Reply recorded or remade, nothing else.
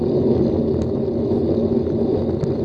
recorded